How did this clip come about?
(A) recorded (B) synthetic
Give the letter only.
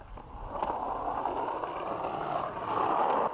A